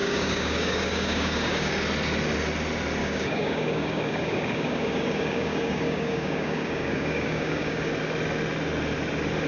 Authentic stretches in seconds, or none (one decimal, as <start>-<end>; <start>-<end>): 1.7-3.0; 7.9-9.5